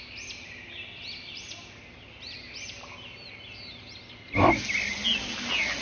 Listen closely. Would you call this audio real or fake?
real